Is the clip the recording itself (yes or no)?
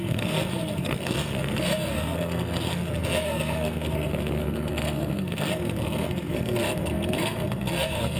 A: no